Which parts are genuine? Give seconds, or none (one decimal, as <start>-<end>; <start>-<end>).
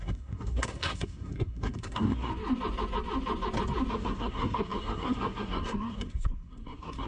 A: 2.3-3.9